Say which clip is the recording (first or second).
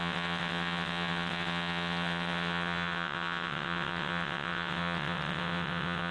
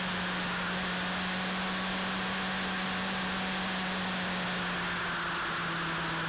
second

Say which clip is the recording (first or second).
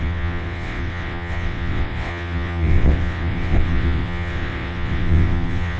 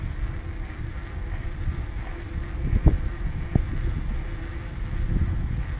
second